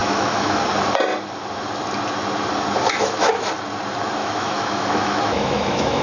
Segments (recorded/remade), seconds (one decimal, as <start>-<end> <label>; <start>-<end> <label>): 0.0-0.6 remade; 0.6-3.0 recorded; 3.0-3.5 remade; 3.5-4.2 recorded; 4.2-6.0 remade